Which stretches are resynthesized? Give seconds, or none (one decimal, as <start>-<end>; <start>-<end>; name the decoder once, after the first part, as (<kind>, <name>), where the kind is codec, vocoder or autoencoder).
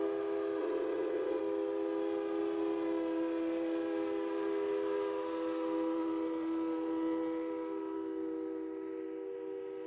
0.6-1.4 (vocoder, WaveNeXt)